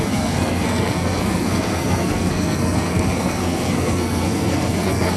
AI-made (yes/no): yes